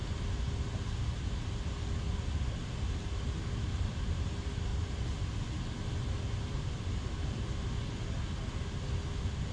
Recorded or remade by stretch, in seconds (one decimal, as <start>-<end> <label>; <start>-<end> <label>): 0.0-9.5 recorded